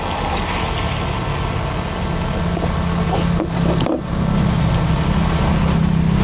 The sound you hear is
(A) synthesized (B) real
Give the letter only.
B